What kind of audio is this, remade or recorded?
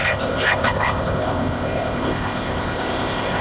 remade